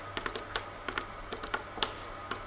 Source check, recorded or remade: recorded